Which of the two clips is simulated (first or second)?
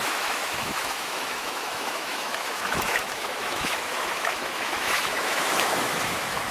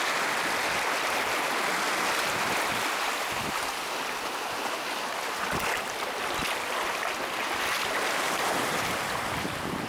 first